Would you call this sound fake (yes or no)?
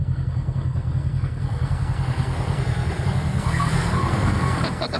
yes